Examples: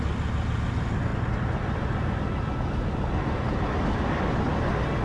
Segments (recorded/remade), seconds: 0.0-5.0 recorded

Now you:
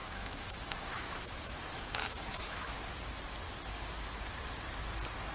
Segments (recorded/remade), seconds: 0.0-2.8 remade; 2.8-5.3 recorded